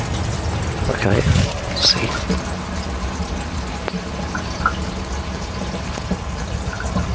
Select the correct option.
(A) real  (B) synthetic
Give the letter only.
A